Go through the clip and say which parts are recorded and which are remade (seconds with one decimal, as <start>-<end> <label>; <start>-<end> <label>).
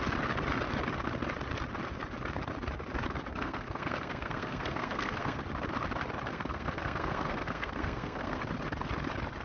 0.0-3.3 recorded; 3.3-5.4 remade; 5.4-6.3 recorded; 6.3-8.4 remade; 8.4-9.4 recorded